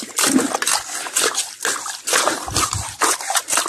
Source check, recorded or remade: recorded